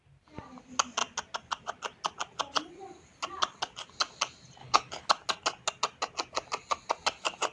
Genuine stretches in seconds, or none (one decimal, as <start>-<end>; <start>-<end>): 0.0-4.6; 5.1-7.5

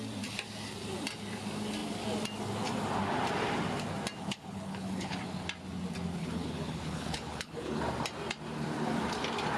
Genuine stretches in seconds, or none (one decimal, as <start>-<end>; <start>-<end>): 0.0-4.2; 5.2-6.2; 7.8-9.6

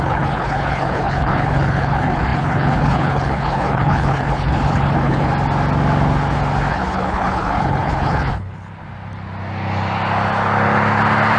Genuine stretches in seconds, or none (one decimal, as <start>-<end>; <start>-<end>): 5.3-6.7; 8.7-11.4

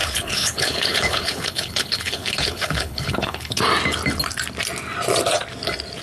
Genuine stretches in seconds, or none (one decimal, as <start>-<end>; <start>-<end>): 3.6-6.0

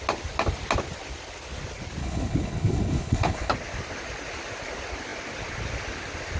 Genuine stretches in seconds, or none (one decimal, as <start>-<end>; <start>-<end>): 0.0-2.0; 3.5-6.4

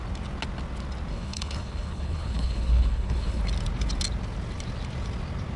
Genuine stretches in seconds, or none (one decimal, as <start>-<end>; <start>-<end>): 0.0-1.1; 3.4-5.6